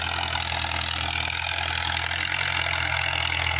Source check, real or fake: real